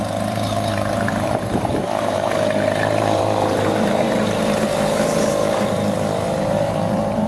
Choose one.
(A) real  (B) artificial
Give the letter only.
B